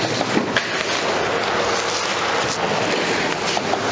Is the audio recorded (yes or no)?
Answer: yes